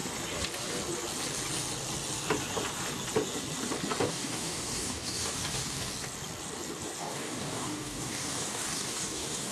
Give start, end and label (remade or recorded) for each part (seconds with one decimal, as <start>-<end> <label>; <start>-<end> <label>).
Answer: 0.0-4.0 recorded; 4.0-5.9 remade; 5.9-7.0 recorded; 7.0-9.5 remade